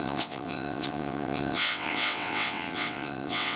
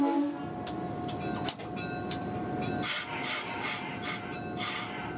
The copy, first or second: first